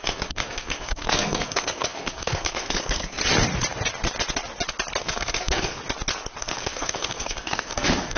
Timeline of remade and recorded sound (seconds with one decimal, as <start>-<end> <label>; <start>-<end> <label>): 0.0-3.2 remade; 3.2-5.0 recorded; 5.0-5.8 remade; 5.8-6.4 recorded; 6.4-8.2 remade